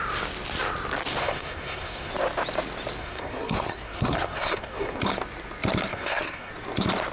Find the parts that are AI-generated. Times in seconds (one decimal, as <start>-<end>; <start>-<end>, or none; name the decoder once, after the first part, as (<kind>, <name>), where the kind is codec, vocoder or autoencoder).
1.2-2.1 (codec, SNAC); 3.0-5.0; 5.9-6.5